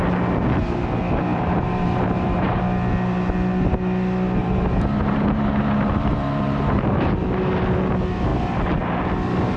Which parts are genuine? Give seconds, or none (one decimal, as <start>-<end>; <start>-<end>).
0.0-1.3; 2.6-4.4; 7.1-9.6